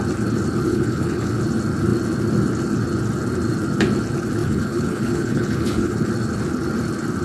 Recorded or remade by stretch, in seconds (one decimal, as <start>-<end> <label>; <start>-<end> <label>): 0.0-0.7 recorded; 0.7-1.4 remade; 1.4-4.4 recorded; 4.4-6.1 remade; 6.1-7.2 recorded